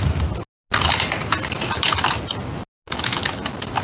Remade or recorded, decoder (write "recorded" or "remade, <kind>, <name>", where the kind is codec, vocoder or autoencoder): recorded